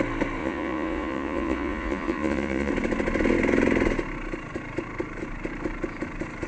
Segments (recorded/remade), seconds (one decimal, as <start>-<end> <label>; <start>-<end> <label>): 0.0-0.4 recorded; 0.4-2.7 remade; 2.7-6.5 recorded